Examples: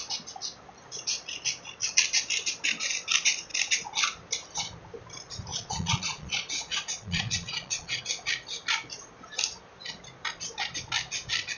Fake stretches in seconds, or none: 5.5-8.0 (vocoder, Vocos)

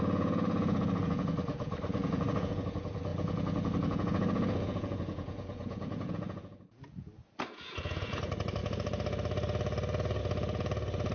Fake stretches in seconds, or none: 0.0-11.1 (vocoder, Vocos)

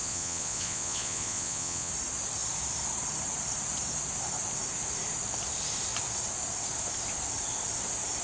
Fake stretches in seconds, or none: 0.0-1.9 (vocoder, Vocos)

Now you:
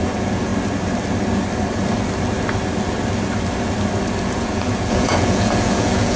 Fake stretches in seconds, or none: 0.0-0.5 (vocoder, Vocos); 4.2-6.2

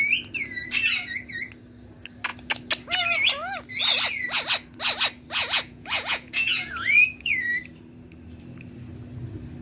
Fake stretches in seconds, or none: 5.4-7.5 (vocoder, Vocos)

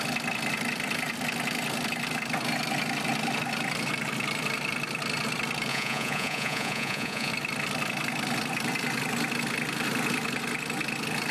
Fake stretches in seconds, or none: 5.7-7.3 (vocoder, Vocos)